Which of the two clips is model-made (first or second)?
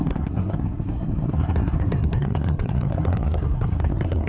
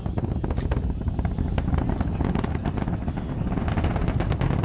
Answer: first